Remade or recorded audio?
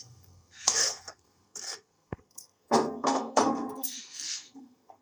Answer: remade